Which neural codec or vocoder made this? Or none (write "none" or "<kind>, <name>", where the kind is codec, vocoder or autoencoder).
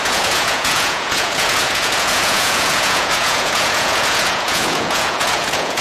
vocoder, Vocos